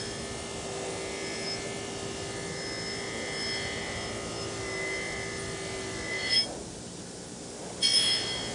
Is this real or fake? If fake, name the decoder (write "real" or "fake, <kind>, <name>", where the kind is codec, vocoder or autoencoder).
real